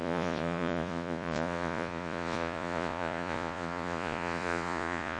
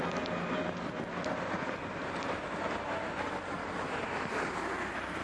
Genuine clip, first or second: second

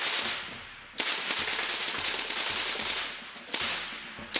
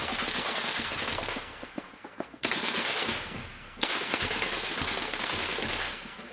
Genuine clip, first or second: first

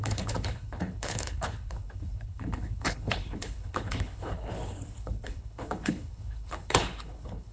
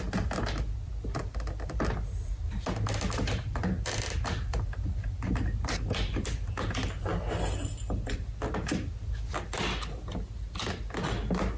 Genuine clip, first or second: second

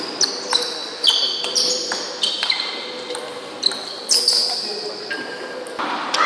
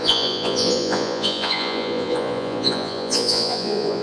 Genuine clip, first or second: first